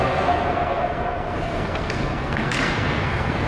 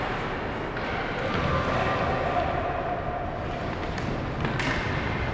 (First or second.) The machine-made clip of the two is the first